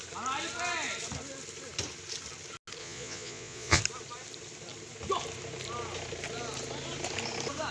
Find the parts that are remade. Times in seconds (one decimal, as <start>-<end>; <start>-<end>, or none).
2.8-3.8